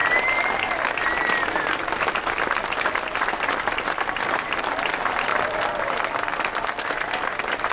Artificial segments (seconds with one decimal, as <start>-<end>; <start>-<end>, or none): 0.0-4.6; 5.3-6.9